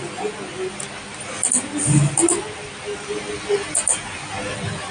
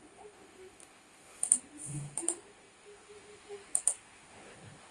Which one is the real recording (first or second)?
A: first